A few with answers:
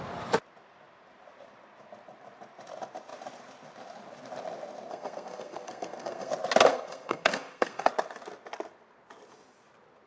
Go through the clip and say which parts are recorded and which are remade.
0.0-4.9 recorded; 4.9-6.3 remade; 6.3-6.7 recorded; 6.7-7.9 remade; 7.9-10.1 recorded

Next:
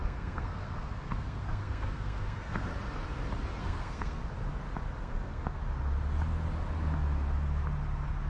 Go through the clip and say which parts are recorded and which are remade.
0.0-2.7 remade; 2.7-3.6 recorded; 3.6-4.2 remade; 4.2-5.0 recorded; 5.0-5.6 remade; 5.6-8.3 recorded

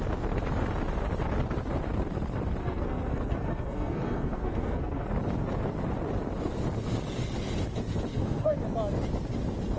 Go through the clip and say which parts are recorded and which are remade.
0.0-2.6 recorded; 2.6-5.1 remade; 5.1-8.1 recorded; 8.1-8.6 remade; 8.6-9.8 recorded

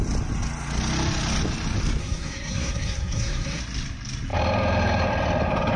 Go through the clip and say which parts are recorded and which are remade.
0.0-2.0 recorded; 2.0-3.6 remade; 3.6-5.8 recorded

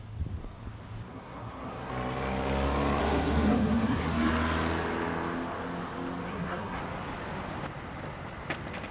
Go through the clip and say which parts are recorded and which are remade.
0.0-1.1 recorded; 1.1-1.9 remade; 1.9-3.0 recorded; 3.0-4.3 remade; 4.3-6.3 recorded; 6.3-6.8 remade; 6.8-8.9 recorded

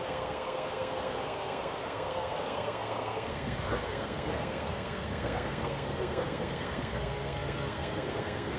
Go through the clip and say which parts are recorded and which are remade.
0.0-8.6 remade

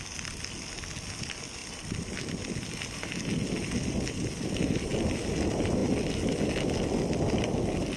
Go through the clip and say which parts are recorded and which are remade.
0.0-8.0 recorded